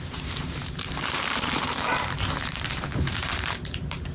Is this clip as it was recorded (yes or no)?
no